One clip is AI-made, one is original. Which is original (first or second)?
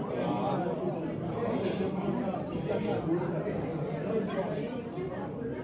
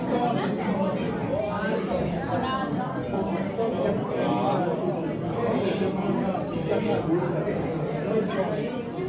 second